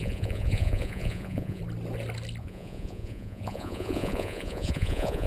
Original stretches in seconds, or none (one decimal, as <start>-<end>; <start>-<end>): 1.6-2.4